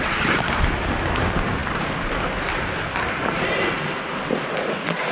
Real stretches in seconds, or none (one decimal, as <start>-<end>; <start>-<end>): 0.0-5.1